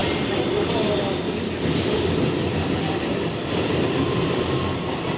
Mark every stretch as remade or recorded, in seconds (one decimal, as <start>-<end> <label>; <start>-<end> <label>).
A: 0.0-5.2 recorded